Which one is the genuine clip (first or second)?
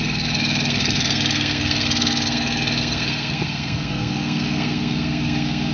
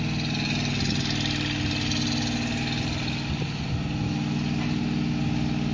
second